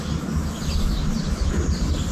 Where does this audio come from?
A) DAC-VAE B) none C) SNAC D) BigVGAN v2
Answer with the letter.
B